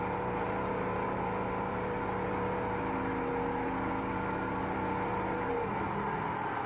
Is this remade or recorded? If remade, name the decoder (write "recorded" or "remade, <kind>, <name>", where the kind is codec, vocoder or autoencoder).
recorded